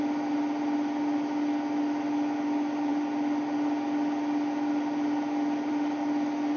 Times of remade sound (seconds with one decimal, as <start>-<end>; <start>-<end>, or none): none